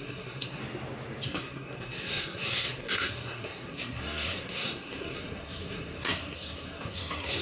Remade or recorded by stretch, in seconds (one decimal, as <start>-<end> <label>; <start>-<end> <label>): 0.0-0.6 remade; 0.6-1.2 recorded; 1.2-7.4 remade